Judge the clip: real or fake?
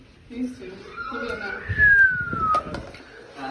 real